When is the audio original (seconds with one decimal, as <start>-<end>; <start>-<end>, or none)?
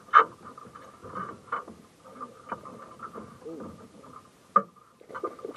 0.0-5.6